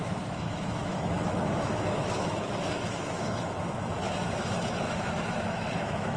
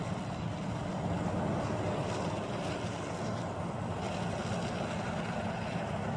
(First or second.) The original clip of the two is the second